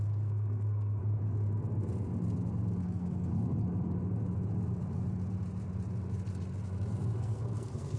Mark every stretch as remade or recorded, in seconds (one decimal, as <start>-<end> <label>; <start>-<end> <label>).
0.0-1.0 remade; 1.0-2.8 recorded; 2.8-3.3 remade; 3.3-7.2 recorded; 7.2-8.0 remade